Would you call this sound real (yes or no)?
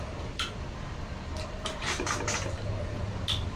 yes